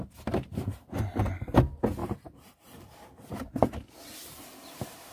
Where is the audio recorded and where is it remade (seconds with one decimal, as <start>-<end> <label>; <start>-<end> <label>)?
0.0-2.0 recorded; 2.0-5.1 remade